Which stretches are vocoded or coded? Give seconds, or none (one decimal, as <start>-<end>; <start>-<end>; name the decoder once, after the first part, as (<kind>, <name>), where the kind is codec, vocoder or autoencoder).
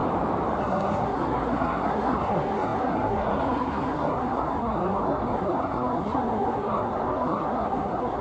0.6-8.2 (codec, SNAC)